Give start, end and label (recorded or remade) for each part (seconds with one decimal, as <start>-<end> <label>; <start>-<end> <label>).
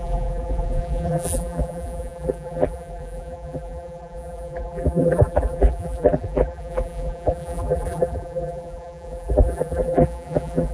0.0-10.7 remade